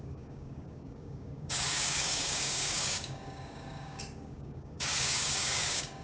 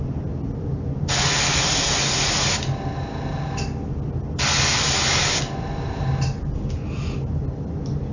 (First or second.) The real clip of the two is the second